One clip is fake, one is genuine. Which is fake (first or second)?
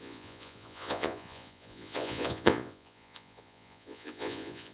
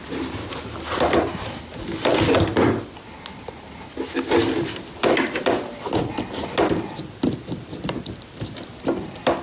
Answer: first